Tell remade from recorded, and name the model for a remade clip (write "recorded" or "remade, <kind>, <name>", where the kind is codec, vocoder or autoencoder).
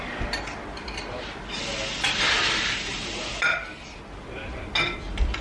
recorded